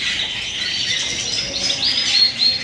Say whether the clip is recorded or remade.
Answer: recorded